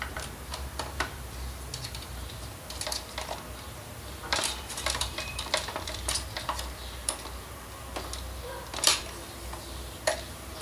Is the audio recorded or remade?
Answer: remade